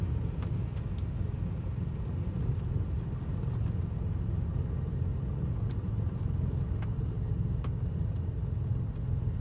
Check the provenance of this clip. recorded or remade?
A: recorded